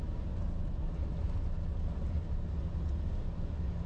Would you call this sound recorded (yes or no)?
yes